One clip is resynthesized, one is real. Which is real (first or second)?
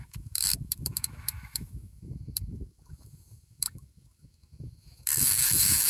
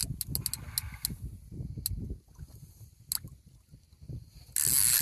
second